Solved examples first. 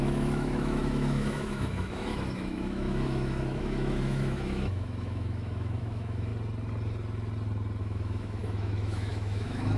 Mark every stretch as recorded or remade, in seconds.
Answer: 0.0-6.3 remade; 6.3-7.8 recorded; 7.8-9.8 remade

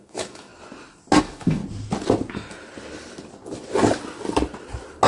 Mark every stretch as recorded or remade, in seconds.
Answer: 0.0-0.5 remade; 0.5-1.2 recorded; 1.2-1.6 remade; 1.6-5.1 recorded

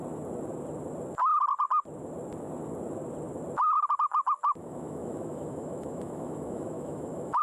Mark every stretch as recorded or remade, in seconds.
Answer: 0.0-4.6 recorded; 4.6-7.4 remade

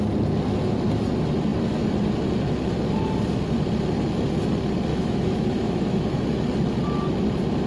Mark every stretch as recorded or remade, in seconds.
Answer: 0.0-4.9 recorded; 4.9-6.4 remade; 6.4-7.7 recorded

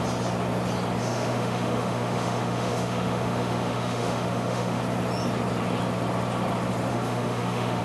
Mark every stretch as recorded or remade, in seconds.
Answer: 0.0-1.0 recorded; 1.0-4.8 remade; 4.8-6.9 recorded; 6.9-7.8 remade